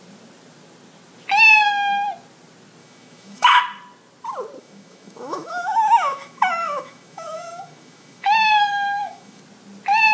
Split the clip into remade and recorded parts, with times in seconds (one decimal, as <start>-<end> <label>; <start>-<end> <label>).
0.0-2.8 recorded; 2.8-3.6 remade; 3.6-4.6 recorded; 4.6-9.4 remade; 9.4-10.1 recorded

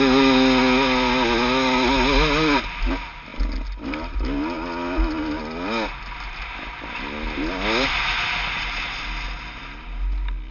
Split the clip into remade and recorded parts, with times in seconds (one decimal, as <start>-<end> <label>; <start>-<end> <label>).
0.0-10.5 recorded

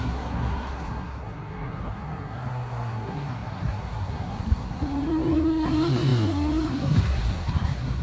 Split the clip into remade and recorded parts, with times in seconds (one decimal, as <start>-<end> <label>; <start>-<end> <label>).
0.0-8.0 remade

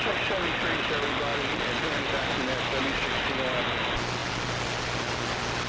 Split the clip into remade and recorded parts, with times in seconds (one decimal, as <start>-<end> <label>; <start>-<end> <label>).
0.0-5.7 recorded